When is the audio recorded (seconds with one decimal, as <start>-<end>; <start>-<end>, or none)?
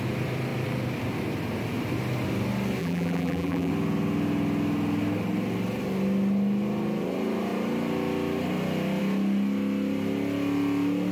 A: 0.0-2.8; 3.7-11.1